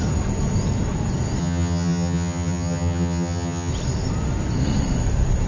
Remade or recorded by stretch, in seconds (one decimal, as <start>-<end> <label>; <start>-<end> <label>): 0.0-1.4 recorded; 1.4-3.7 remade; 3.7-5.5 recorded